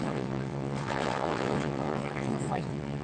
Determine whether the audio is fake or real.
fake